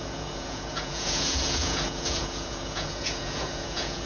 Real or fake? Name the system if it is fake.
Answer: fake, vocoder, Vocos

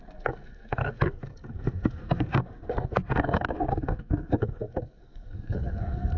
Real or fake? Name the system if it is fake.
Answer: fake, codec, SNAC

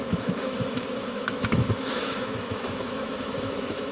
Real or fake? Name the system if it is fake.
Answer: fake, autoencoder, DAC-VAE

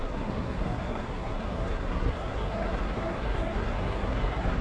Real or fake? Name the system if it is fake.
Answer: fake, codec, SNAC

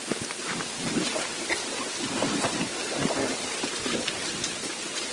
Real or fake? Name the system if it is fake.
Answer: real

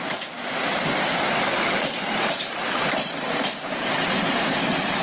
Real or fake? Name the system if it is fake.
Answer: fake, vocoder, BigVGAN v2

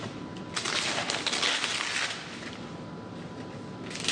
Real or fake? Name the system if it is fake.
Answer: real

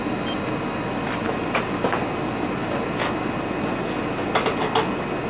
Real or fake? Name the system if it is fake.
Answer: real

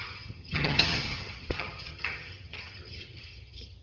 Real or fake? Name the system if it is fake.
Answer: fake, vocoder, HiFi-GAN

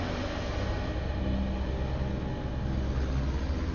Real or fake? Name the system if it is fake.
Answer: real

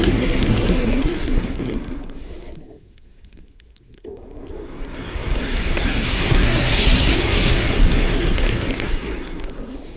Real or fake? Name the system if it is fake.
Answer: fake, codec, SNAC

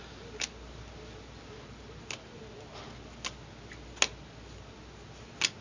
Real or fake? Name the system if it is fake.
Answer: real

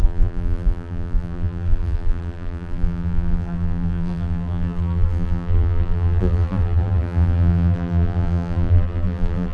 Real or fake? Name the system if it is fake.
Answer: fake, vocoder, BigVGAN v2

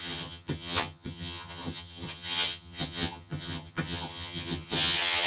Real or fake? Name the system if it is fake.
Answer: fake, vocoder, HiFi-GAN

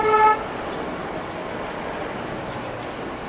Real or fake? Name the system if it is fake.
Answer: real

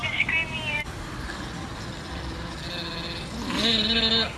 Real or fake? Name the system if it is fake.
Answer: real